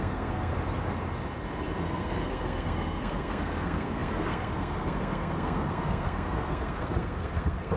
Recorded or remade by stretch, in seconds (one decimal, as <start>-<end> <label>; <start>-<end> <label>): 0.0-0.5 remade; 0.5-1.8 recorded; 1.8-7.8 remade